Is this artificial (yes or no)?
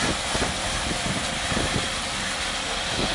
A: no